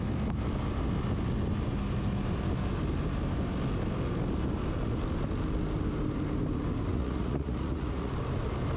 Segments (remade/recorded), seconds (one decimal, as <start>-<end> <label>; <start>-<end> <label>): 0.0-6.9 recorded; 6.9-8.1 remade; 8.1-8.8 recorded